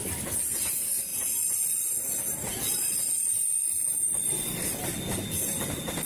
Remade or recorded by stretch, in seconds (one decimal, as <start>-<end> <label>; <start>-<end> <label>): 0.0-6.1 recorded